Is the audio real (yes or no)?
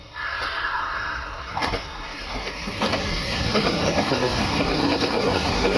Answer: no